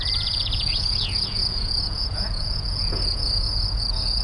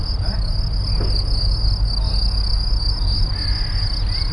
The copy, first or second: first